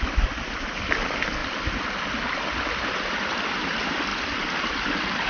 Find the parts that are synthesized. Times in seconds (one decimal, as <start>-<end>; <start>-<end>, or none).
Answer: none